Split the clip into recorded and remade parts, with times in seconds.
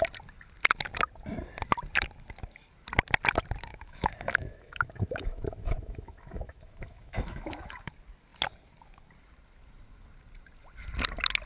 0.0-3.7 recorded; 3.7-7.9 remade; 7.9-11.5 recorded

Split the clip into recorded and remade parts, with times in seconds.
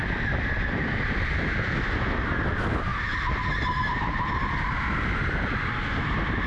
0.0-6.5 recorded